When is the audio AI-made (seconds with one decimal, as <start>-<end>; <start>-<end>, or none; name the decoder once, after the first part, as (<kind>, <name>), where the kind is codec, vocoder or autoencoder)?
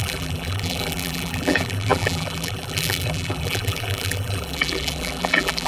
0.0-5.7 (vocoder, BigVGAN v2)